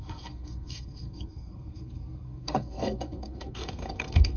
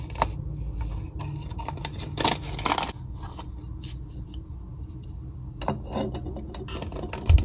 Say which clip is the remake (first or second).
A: first